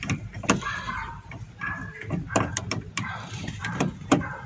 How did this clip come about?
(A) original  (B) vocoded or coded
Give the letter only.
B